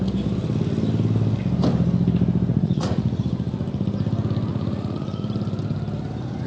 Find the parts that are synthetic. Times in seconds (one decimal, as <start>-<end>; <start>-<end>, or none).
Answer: 2.5-3.2; 4.5-5.2